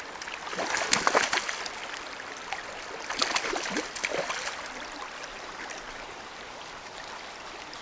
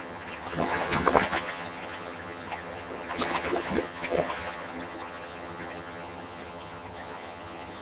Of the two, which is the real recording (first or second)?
first